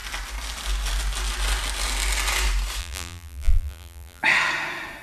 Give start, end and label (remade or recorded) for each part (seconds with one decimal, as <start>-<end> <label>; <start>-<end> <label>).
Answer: 0.0-2.8 recorded; 2.8-4.2 remade; 4.2-5.0 recorded